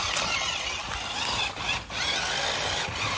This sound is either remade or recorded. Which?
recorded